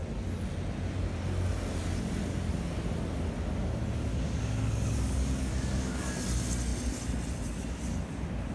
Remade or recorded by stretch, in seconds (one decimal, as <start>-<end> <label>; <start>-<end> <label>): 0.0-4.1 recorded; 4.1-6.1 remade; 6.1-8.5 recorded